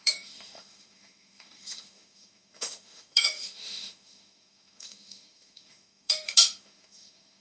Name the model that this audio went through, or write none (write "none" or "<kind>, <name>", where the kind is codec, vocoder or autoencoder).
autoencoder, DAC-VAE